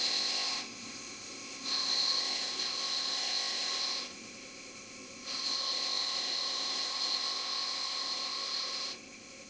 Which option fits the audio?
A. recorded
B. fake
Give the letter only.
B